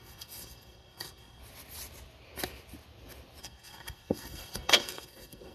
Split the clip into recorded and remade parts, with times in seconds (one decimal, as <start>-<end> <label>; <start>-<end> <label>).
0.0-1.4 remade; 1.4-3.4 recorded; 3.4-5.5 remade